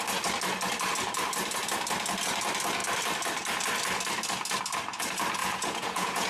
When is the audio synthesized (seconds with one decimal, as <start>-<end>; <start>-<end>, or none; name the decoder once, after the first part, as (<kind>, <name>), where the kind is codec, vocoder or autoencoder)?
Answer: 5.4-6.3 (vocoder, Vocos)